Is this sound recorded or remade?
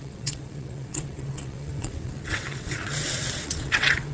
remade